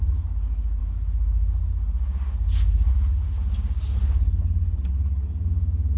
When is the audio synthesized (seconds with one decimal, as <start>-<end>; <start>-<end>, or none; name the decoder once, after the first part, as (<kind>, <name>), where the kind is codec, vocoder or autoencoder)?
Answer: 4.0-5.4 (codec, HILCodec)